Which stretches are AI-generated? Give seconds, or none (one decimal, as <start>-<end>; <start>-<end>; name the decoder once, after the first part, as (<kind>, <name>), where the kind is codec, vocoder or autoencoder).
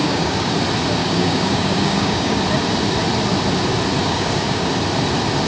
0.0-0.5 (codec, DAC); 1.0-2.4; 4.0-4.7